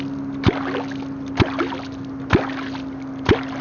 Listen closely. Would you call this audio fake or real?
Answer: real